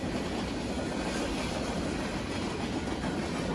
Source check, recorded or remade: recorded